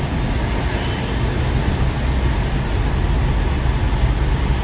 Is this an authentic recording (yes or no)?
yes